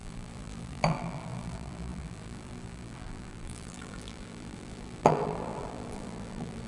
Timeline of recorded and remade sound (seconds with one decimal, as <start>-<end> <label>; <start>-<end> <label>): 0.0-6.7 remade